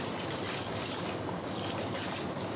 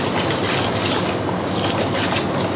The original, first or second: second